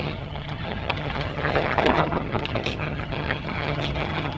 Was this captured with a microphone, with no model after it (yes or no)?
no